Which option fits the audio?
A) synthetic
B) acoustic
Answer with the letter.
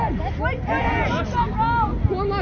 B